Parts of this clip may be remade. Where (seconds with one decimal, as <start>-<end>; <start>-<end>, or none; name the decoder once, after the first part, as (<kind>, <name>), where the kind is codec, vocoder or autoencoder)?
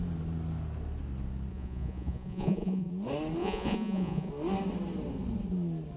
1.5-2.9 (vocoder, Vocos); 3.4-4.3